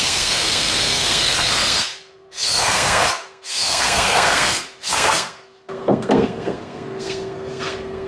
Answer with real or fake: fake